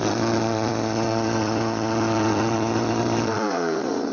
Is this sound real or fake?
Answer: fake